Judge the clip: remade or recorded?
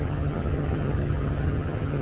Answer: remade